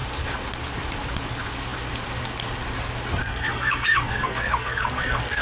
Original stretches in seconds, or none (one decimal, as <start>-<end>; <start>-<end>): 0.0-3.2